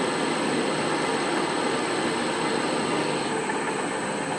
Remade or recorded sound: recorded